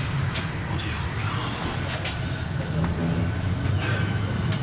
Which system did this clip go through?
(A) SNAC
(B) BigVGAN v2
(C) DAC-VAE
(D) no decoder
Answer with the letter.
D